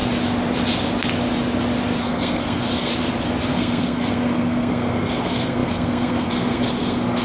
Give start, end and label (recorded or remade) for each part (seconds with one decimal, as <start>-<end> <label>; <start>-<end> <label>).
0.0-2.0 recorded; 2.0-2.9 remade; 2.9-3.4 recorded; 3.4-7.2 remade